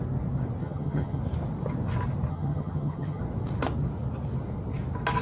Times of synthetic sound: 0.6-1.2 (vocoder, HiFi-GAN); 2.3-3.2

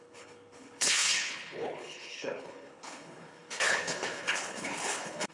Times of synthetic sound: 0.0-5.3 (codec, HILCodec)

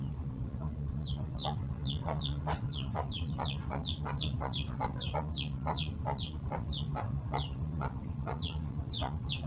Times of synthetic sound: 0.0-9.5 (vocoder, WaveNeXt)

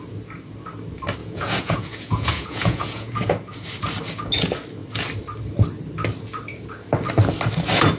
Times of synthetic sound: 1.2-3.3 (vocoder, Vocos)

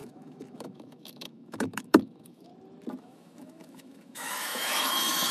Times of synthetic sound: 0.0-2.5 (autoencoder, DAC-VAE); 3.0-5.3

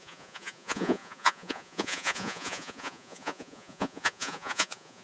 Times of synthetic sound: 0.0-5.0 (vocoder, Vocos)